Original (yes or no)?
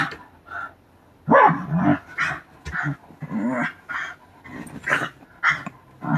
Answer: yes